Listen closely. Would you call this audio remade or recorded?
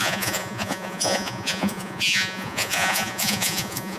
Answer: remade